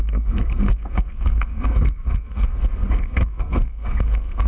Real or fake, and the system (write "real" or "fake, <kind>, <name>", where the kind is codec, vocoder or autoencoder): fake, codec, SNAC